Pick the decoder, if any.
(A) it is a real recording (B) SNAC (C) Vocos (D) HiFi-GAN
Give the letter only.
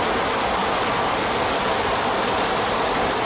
A